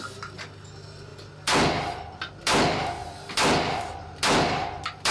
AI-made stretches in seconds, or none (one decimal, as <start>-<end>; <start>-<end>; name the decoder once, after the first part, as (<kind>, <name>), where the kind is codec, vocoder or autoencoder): none